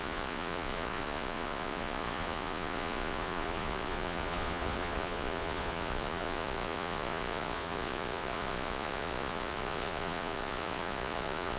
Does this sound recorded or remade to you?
remade